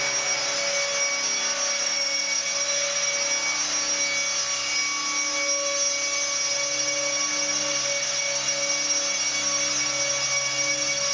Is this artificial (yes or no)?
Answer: no